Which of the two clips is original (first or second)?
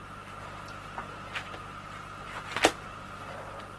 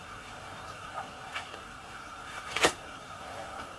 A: first